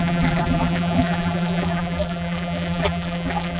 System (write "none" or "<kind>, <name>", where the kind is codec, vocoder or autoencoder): vocoder, BigVGAN v2